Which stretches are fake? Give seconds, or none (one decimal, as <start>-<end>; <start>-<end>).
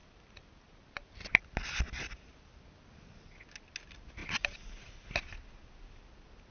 none